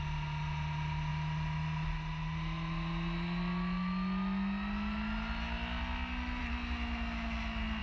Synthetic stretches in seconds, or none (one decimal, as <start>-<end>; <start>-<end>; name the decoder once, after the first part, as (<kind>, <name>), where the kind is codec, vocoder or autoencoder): none